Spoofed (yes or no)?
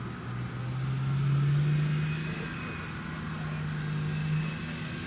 no